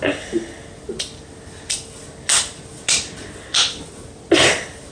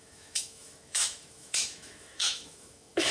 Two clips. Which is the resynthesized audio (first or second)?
second